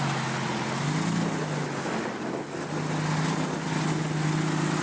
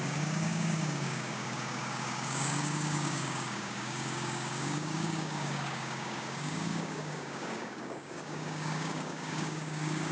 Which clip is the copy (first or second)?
second